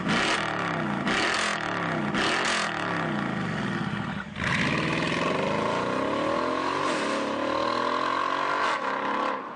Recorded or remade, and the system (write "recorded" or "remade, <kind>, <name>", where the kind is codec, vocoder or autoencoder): recorded